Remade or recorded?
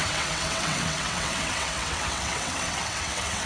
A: remade